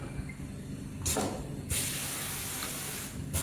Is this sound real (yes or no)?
yes